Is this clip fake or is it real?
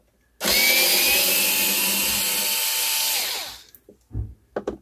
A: real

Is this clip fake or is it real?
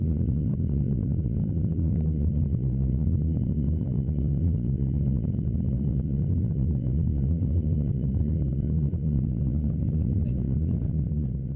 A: fake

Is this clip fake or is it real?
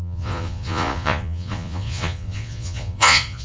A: fake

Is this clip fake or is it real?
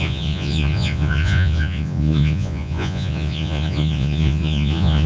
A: fake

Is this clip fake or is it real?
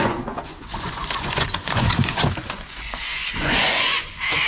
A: fake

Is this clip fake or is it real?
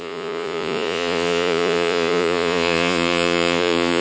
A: fake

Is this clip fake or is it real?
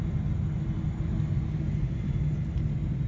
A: real